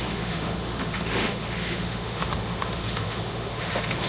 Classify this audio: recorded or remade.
remade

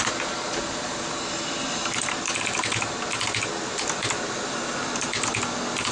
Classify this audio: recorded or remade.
recorded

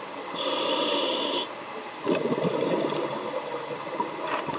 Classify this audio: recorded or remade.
recorded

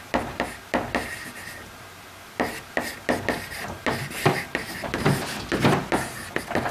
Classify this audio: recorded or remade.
recorded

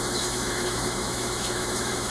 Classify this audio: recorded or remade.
remade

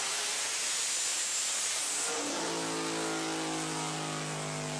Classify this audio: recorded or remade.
recorded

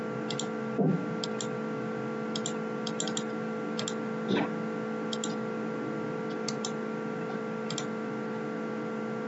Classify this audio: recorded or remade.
recorded